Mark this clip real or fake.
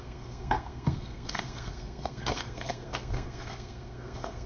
fake